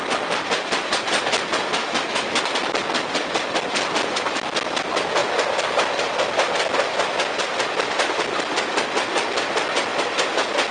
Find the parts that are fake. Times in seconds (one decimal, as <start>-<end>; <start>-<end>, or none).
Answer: 1.8-2.4